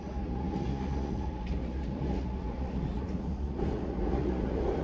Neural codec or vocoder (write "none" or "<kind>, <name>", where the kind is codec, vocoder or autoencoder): vocoder, Vocos